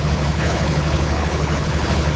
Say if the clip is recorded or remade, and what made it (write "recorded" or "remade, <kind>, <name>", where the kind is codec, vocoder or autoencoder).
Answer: remade, codec, HILCodec